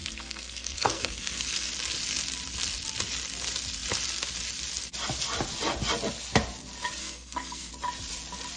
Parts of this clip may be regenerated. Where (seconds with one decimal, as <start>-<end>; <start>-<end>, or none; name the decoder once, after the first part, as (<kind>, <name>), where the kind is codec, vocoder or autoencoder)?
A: 0.0-1.7 (codec, SNAC); 7.0-7.7